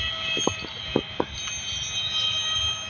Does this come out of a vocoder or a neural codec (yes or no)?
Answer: no